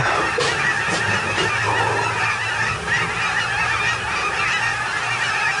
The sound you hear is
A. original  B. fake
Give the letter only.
A